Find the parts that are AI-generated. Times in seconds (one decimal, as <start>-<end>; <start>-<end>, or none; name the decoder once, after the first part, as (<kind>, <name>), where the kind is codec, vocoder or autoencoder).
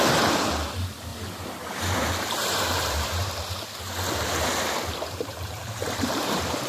1.1-3.3 (vocoder, BigVGAN v2); 4.9-6.7